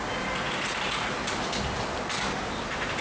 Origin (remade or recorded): recorded